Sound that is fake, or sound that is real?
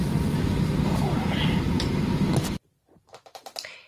fake